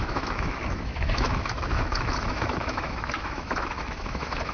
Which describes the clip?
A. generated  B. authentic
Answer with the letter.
A